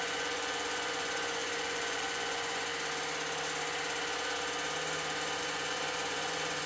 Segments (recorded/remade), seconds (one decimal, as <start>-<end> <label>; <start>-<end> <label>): 0.0-2.7 remade; 2.7-5.4 recorded; 5.4-6.7 remade